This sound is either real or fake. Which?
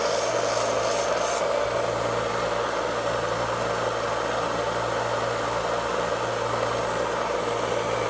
real